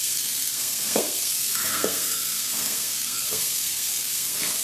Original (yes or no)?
no